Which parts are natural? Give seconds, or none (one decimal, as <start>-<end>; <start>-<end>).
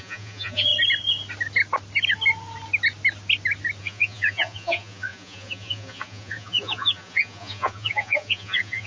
0.7-3.8